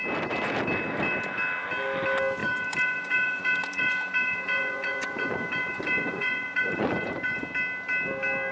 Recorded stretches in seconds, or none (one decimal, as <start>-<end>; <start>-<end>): 0.0-2.4; 7.4-8.5